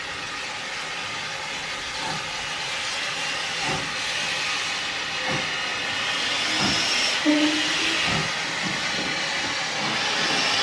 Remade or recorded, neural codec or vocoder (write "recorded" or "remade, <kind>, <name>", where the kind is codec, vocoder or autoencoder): recorded